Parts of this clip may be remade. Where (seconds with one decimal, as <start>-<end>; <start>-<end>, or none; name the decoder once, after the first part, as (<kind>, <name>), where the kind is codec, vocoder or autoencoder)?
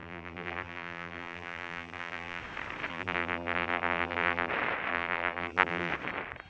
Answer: 0.0-2.4 (vocoder, BigVGAN v2); 2.9-4.5; 4.9-5.9